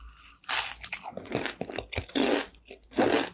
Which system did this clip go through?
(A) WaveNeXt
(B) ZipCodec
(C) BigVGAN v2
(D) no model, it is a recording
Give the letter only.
D